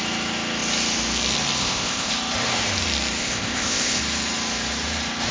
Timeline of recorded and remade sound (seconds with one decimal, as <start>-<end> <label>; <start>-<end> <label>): 0.0-1.6 recorded; 1.6-2.1 remade; 2.1-3.2 recorded; 3.2-4.0 remade; 4.0-5.3 recorded